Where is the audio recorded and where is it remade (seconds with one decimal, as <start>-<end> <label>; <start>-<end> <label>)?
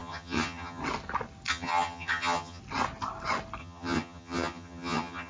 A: 0.0-0.8 remade; 0.8-1.5 recorded; 1.5-2.6 remade; 2.6-3.6 recorded; 3.6-5.3 remade